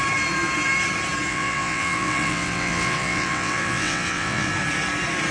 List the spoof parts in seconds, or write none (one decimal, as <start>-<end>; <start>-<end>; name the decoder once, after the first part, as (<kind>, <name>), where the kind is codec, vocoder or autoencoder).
1.3-4.5 (vocoder, WaveNeXt)

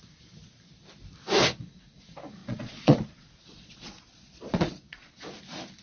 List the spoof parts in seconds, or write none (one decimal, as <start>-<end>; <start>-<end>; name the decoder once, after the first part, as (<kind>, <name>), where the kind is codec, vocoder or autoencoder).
2.4-5.1 (vocoder, Vocos)